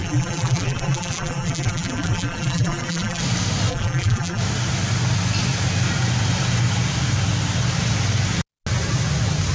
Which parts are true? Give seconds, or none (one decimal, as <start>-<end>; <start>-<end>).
3.2-3.7; 4.4-9.5